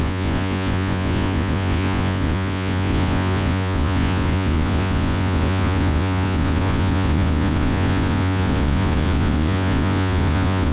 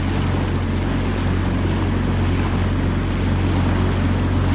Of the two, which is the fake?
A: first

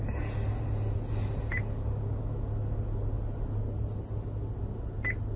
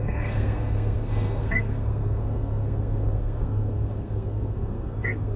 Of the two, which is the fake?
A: second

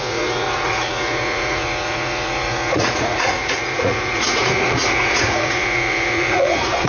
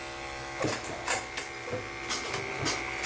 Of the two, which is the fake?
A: first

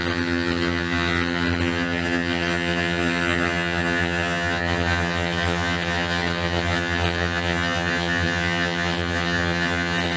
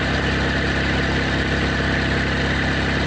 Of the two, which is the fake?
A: first